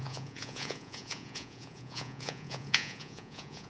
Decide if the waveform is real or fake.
fake